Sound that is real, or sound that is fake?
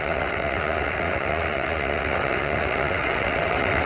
fake